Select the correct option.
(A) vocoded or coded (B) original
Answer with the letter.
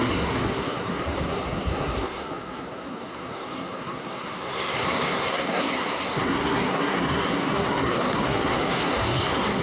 A